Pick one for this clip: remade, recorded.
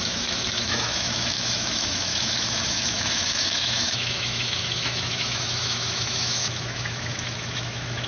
remade